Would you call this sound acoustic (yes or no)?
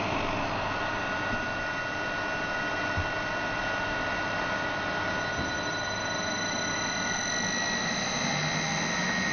yes